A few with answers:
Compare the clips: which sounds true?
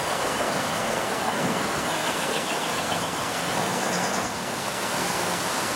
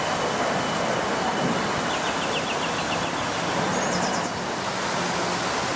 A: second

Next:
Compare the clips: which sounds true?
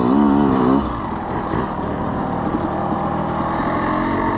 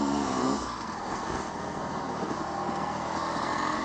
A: first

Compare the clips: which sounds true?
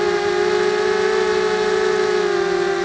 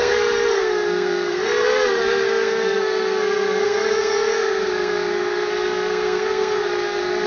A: first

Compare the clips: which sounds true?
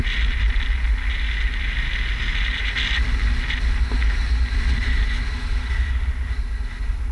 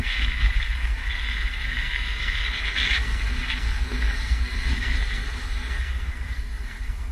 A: first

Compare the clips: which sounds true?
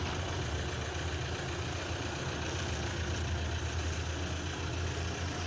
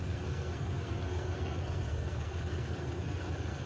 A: first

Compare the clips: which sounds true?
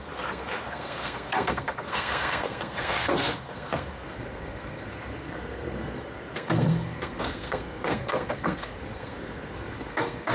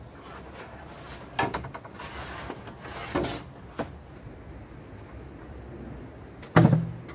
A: second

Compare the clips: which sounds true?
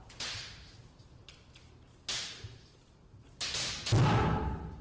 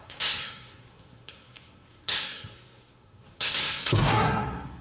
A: first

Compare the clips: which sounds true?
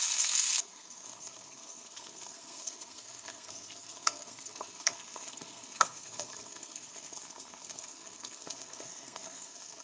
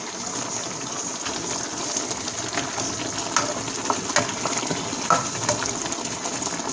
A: second